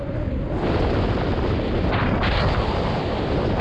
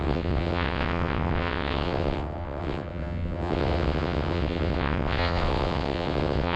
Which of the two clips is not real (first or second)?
second